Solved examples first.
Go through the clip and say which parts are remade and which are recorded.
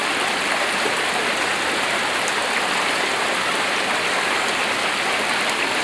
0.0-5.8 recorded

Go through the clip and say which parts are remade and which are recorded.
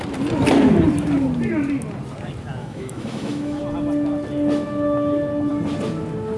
0.0-2.6 recorded; 2.6-3.6 remade; 3.6-6.4 recorded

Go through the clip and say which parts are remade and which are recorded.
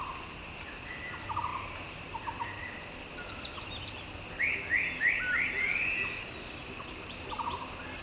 0.0-6.6 recorded; 6.6-7.3 remade; 7.3-8.0 recorded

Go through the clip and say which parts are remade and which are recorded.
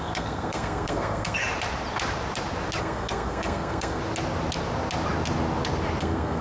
0.0-1.4 remade; 1.4-2.8 recorded; 2.8-4.0 remade; 4.0-6.0 recorded; 6.0-6.4 remade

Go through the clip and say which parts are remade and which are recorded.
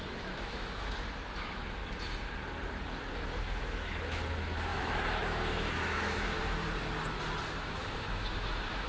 0.0-1.8 remade; 1.8-3.1 recorded; 3.1-6.4 remade; 6.4-7.6 recorded; 7.6-8.9 remade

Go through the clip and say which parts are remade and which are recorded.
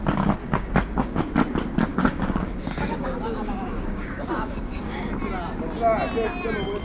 0.0-0.4 recorded; 0.4-1.2 remade; 1.2-1.9 recorded; 1.9-5.1 remade; 5.1-6.8 recorded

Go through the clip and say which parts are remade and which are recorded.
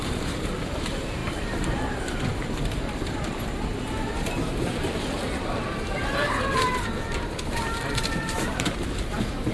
0.0-9.5 remade